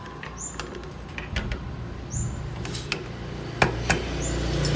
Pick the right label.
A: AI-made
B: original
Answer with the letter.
B